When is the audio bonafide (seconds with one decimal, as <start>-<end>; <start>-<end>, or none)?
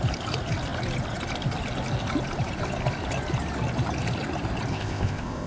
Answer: 0.0-4.7